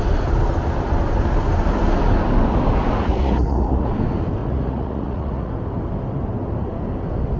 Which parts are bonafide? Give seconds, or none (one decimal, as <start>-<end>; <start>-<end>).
0.0-3.0; 3.9-4.4; 5.5-7.4